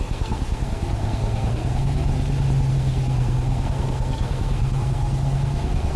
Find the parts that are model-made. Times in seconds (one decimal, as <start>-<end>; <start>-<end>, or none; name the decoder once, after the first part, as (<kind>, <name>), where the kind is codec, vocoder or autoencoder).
0.0-2.1 (codec, SNAC); 2.7-6.0